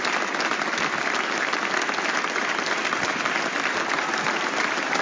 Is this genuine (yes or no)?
yes